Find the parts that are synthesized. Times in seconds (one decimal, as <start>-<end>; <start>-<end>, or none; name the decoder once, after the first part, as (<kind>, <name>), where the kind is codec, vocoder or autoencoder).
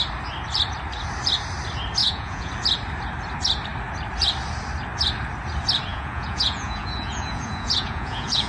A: 2.0-2.5 (vocoder, Vocos); 5.9-8.5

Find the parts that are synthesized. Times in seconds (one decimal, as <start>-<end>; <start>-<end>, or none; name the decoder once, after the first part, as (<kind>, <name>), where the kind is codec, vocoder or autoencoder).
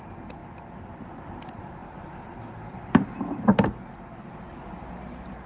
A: 0.0-0.4 (vocoder, BigVGAN v2); 1.4-1.8; 2.7-3.5; 4.7-5.5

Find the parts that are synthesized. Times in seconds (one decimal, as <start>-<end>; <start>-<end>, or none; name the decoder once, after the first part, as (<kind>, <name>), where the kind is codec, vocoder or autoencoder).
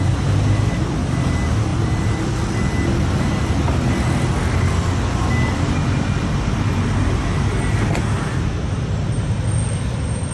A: none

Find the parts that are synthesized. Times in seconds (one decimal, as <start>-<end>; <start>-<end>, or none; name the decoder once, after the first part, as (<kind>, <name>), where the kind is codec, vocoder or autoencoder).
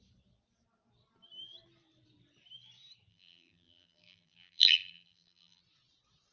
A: 3.1-5.6 (vocoder, BigVGAN v2)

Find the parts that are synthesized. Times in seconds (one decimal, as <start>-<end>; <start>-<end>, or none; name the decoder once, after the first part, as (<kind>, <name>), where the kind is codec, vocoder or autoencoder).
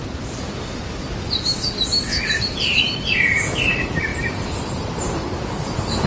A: 2.1-2.8 (vocoder, BigVGAN v2); 4.1-6.1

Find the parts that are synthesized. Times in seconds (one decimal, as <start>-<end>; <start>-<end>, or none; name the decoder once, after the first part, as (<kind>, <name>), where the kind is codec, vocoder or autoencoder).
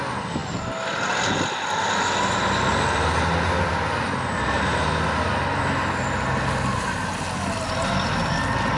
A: none